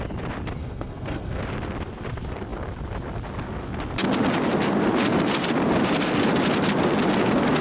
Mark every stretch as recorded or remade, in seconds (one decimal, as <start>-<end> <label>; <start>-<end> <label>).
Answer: 0.0-0.6 recorded; 0.6-1.4 remade; 1.4-7.6 recorded